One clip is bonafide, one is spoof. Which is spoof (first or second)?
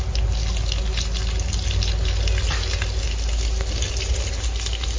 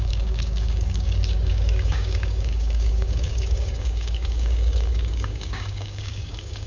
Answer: second